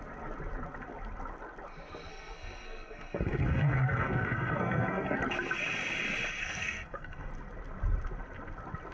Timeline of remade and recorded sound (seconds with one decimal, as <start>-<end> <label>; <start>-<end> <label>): 0.0-2.1 recorded; 2.1-5.2 remade; 5.2-6.4 recorded; 6.4-7.3 remade; 7.3-8.9 recorded